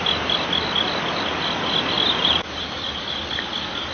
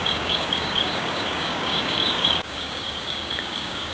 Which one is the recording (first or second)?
first